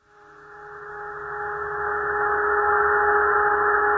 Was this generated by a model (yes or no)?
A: no